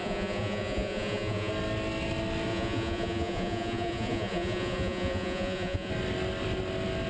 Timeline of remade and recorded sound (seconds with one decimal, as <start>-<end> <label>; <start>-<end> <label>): 0.0-1.5 remade; 1.5-2.5 recorded; 2.5-5.9 remade; 5.9-7.1 recorded